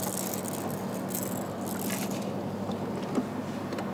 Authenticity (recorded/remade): recorded